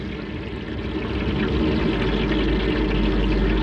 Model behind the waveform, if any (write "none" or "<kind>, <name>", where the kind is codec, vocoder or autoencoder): none